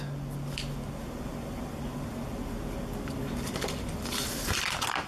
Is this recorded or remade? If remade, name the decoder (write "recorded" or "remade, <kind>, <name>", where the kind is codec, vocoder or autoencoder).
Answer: recorded